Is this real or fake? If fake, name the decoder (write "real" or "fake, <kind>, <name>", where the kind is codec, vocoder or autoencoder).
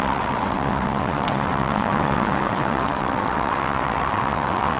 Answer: fake, vocoder, WaveNeXt